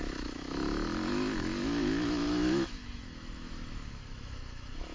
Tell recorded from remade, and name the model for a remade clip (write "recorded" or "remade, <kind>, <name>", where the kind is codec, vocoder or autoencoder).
remade, autoencoder, DAC-VAE